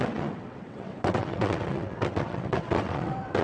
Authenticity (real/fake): fake